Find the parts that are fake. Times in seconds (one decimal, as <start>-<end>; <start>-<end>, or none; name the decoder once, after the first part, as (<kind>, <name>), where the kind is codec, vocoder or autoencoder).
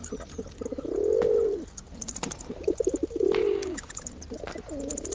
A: 3.4-3.9 (codec, DAC)